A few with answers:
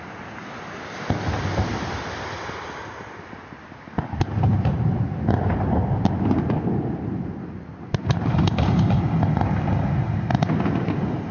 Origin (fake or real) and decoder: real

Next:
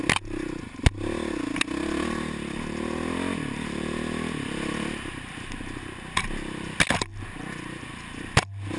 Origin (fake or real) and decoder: real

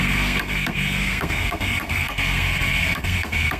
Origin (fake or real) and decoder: fake, codec, SNAC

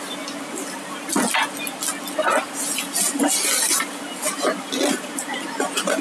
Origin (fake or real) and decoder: real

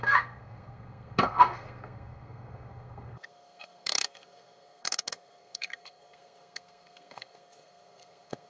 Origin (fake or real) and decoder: fake, codec, SNAC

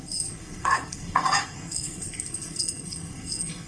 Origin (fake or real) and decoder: fake, codec, SNAC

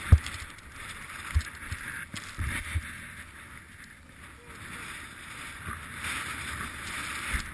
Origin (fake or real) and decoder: real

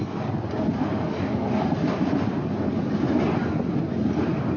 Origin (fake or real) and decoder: real